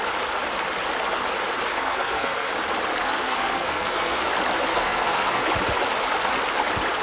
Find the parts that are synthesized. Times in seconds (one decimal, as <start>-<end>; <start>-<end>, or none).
1.7-2.5; 3.0-4.3; 4.7-5.4